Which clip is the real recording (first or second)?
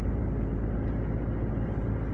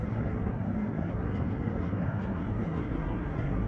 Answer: first